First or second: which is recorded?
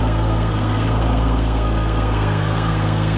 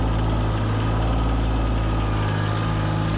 second